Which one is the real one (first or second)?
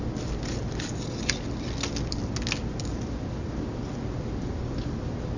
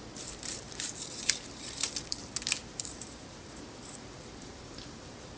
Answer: first